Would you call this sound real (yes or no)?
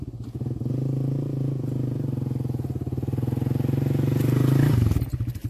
yes